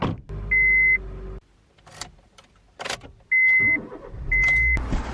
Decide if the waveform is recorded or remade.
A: recorded